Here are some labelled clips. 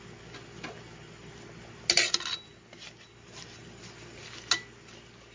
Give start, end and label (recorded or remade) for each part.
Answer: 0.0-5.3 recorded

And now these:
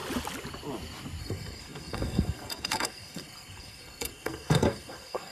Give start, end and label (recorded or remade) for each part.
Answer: 0.0-1.2 recorded; 1.2-5.3 remade

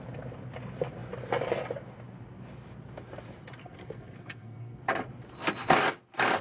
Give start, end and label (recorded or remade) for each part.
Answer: 0.0-3.6 recorded; 3.6-4.8 remade; 4.8-6.4 recorded

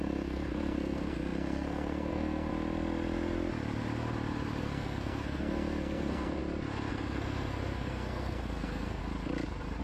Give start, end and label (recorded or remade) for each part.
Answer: 0.0-2.5 remade; 2.5-4.6 recorded; 4.6-6.4 remade; 6.4-6.9 recorded; 6.9-9.0 remade; 9.0-9.8 recorded

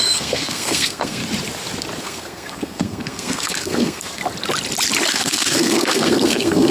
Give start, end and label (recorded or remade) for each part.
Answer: 0.0-1.2 remade; 1.2-2.0 recorded; 2.0-4.2 remade; 4.2-5.1 recorded; 5.1-6.7 remade

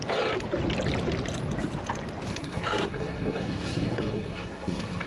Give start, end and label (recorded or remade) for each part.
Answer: 0.0-2.3 recorded; 2.3-5.1 remade